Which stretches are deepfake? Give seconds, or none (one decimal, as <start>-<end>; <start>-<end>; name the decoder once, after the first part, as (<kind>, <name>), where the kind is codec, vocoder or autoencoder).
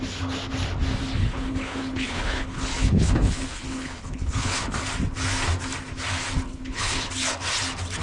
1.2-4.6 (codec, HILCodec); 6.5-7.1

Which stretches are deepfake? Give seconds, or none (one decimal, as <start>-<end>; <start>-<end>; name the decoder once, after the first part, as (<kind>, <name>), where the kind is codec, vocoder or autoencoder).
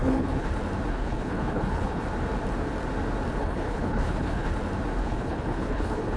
0.0-0.5 (codec, HILCodec); 0.9-2.0; 3.4-4.5; 5.0-6.2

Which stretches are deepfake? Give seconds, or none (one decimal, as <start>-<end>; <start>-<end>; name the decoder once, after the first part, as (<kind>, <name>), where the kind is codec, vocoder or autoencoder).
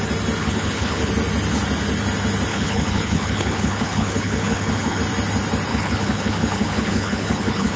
0.4-1.1 (codec, HILCodec); 2.5-5.0; 5.7-7.8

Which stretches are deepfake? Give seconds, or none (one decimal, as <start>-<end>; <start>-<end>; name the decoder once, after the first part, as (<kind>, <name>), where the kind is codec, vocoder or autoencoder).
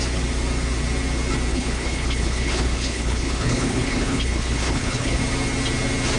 1.5-5.2 (codec, HILCodec)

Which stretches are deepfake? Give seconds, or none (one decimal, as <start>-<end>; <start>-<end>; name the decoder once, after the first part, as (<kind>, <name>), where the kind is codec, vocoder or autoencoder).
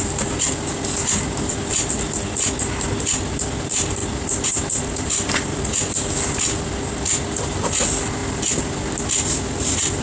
none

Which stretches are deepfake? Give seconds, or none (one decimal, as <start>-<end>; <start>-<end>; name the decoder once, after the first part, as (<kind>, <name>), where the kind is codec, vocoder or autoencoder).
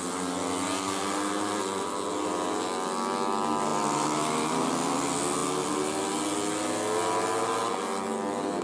none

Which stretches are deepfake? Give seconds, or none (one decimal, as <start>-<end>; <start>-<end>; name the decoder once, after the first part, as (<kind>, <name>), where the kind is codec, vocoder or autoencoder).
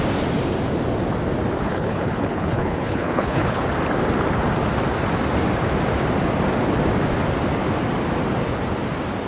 1.6-3.6 (codec, HILCodec)